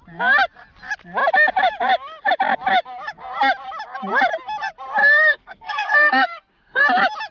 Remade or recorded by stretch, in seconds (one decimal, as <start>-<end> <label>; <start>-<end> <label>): 0.0-5.0 recorded; 5.0-6.8 remade; 6.8-7.3 recorded